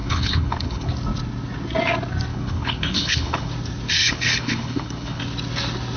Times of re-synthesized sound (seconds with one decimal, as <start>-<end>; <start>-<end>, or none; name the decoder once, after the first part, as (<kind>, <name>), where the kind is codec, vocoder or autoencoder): 0.0-0.9 (codec, HILCodec); 2.3-3.5; 4.0-5.2